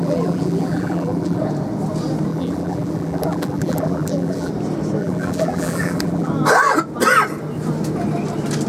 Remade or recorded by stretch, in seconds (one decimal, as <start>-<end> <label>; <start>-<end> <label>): 0.0-1.4 remade; 1.4-2.3 recorded; 2.3-4.5 remade; 4.5-5.0 recorded; 5.0-6.3 remade; 6.3-8.7 recorded